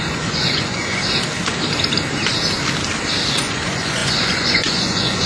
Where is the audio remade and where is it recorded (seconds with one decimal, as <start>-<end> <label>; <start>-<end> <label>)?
0.0-1.0 remade; 1.0-3.3 recorded; 3.3-5.3 remade